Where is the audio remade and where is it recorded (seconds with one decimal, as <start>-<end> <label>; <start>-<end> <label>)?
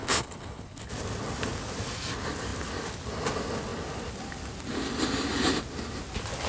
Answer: 0.0-0.9 remade; 0.9-6.5 recorded